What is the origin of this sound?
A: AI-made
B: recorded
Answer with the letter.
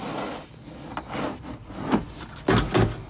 B